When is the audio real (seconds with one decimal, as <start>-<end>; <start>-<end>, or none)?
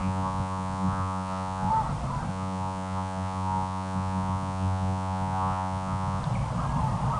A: 1.7-2.3; 6.2-7.2